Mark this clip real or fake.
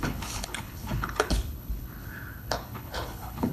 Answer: fake